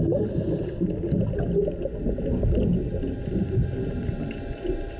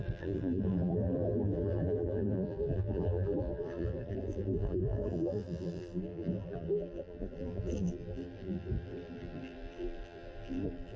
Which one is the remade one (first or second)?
second